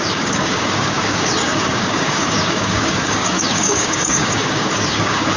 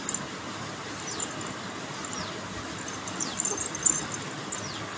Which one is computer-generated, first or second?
first